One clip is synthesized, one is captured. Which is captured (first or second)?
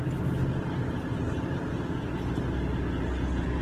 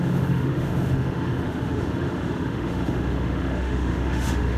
first